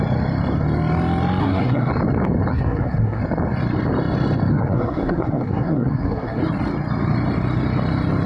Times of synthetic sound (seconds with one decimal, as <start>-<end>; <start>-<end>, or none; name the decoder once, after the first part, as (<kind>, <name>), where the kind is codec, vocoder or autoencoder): 1.4-1.9 (codec, SNAC); 2.5-3.2; 4.5-6.4